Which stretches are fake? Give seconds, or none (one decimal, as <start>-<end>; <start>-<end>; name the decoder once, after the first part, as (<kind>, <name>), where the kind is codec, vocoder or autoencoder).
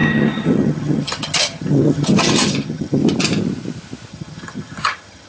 0.0-3.0 (vocoder, HiFi-GAN); 4.1-5.3